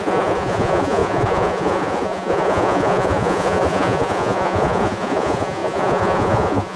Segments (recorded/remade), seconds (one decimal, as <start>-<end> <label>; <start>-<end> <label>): 0.0-6.8 remade